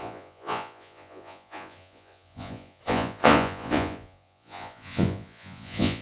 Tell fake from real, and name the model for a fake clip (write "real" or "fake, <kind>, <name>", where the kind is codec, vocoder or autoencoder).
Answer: fake, vocoder, Vocos